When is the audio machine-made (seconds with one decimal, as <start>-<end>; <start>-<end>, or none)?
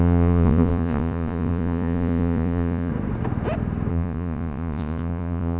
0.0-2.9; 3.9-5.6